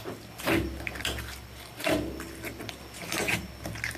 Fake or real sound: fake